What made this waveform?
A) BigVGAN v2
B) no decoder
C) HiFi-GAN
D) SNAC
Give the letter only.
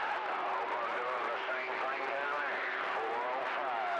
A